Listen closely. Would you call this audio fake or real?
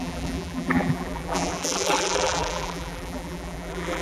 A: fake